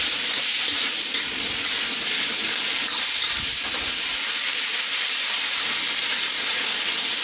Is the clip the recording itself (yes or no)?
no